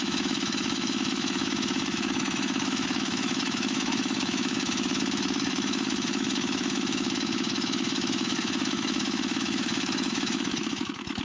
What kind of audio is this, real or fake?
fake